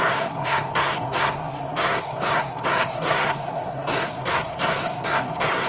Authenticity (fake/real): fake